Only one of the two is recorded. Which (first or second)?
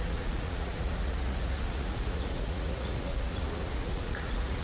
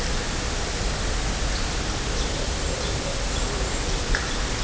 second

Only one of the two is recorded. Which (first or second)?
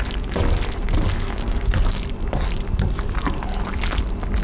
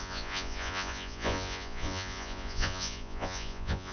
first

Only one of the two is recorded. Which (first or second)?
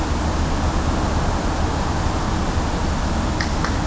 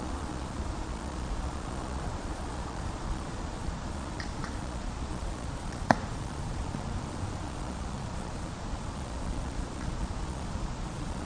first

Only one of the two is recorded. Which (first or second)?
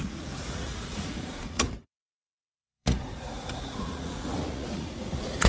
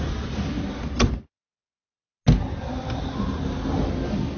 second